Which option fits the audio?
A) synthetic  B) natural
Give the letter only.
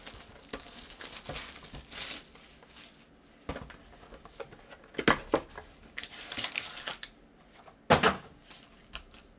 B